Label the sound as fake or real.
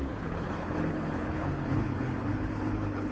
fake